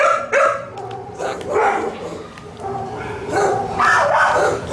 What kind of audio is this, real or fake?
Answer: fake